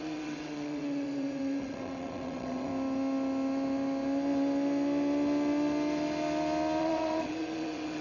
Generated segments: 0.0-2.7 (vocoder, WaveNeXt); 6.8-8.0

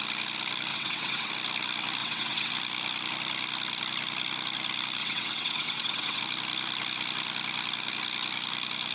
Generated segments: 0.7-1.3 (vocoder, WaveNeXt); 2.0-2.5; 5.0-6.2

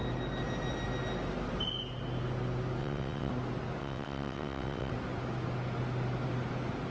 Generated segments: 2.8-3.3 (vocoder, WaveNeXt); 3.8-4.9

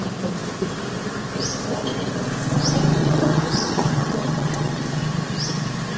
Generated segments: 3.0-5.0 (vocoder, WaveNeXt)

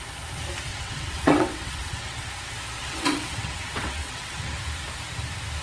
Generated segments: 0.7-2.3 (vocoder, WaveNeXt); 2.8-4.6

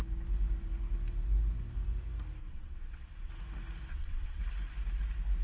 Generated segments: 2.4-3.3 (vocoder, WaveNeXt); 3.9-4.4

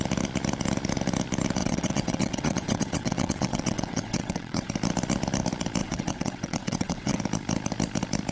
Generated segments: 1.6-4.7 (vocoder, WaveNeXt); 5.8-7.2